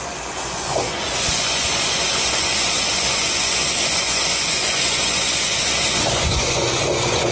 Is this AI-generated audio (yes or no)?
yes